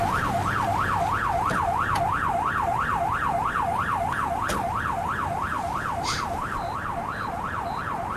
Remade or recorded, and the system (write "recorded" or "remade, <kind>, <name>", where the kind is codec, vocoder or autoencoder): recorded